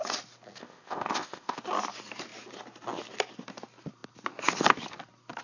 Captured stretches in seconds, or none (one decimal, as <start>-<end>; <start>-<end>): 0.0-0.6; 1.6-5.4